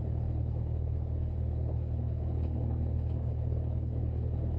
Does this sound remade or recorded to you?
remade